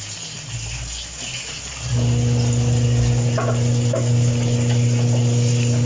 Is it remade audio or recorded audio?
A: recorded